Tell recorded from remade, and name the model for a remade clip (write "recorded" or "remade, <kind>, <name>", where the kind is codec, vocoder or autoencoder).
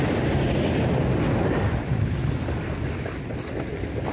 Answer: recorded